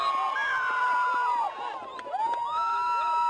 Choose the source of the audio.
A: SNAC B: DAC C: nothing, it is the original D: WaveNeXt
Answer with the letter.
C